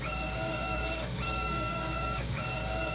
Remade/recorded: remade